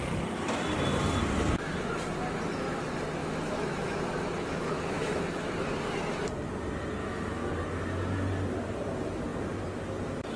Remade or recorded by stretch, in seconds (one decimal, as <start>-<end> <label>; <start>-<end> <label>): 0.0-3.2 recorded; 3.2-5.5 remade; 5.5-7.0 recorded; 7.0-7.5 remade; 7.5-10.4 recorded